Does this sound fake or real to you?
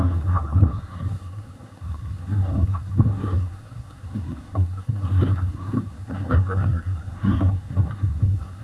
fake